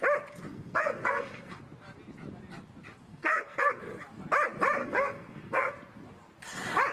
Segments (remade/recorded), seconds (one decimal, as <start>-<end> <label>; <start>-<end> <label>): 0.0-0.5 recorded; 0.5-1.6 remade; 1.6-3.1 recorded; 3.1-3.8 remade; 3.8-4.8 recorded; 4.8-5.7 remade; 5.7-6.9 recorded